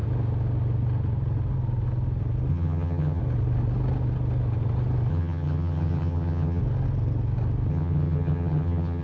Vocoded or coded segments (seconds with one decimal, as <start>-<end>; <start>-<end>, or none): 2.5-3.2; 5.1-6.6; 7.7-9.0